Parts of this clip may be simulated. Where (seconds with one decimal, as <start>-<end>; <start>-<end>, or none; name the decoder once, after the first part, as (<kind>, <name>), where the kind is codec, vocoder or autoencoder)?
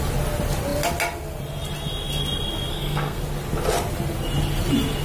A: 2.7-3.2 (codec, SNAC)